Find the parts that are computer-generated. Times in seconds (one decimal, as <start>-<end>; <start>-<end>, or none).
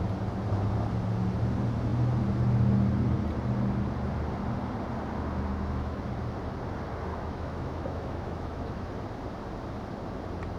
5.5-6.0; 7.1-8.9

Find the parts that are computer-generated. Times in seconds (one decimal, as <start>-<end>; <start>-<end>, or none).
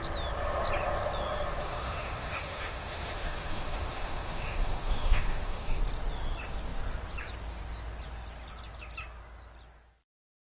1.6-5.8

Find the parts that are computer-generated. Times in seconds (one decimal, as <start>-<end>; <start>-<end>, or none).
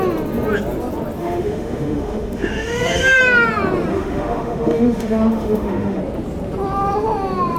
1.2-3.2; 3.9-6.0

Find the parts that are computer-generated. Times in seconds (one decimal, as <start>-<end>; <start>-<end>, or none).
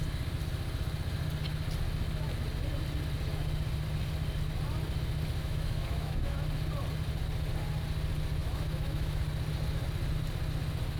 5.4-6.4; 8.4-9.2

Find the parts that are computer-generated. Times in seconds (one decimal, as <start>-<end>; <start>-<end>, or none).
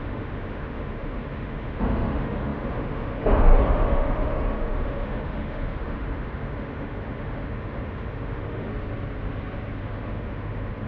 0.0-8.7; 9.8-10.9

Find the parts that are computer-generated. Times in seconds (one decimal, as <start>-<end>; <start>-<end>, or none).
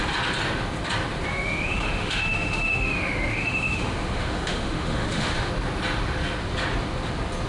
1.3-5.5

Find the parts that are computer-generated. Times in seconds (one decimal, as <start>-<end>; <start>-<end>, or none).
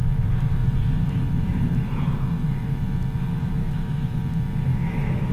3.6-4.2; 4.7-5.3